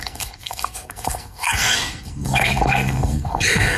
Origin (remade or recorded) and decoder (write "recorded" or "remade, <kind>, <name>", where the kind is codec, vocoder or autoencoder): remade, codec, SNAC